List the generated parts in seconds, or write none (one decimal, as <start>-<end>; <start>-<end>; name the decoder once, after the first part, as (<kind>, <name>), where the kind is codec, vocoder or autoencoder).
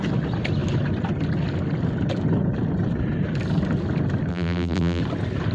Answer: 4.3-5.0 (vocoder, BigVGAN v2)